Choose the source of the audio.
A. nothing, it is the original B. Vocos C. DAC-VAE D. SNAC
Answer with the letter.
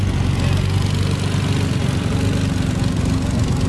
A